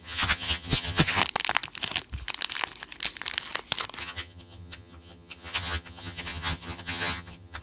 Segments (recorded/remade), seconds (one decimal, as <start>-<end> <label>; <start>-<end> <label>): 0.0-1.2 remade; 1.2-4.0 recorded; 4.0-7.6 remade